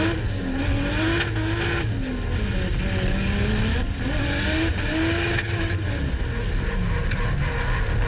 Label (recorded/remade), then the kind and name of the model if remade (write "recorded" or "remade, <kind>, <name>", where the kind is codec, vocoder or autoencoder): recorded